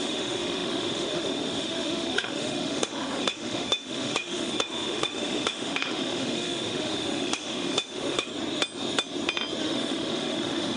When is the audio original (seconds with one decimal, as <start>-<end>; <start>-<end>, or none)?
8.3-9.6